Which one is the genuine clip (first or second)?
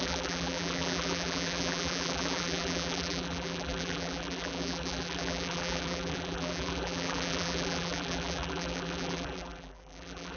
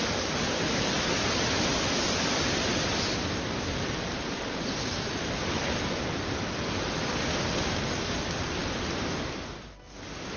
second